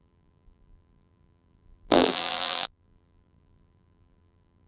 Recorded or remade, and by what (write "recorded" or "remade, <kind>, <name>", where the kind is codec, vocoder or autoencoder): remade, vocoder, BigVGAN v2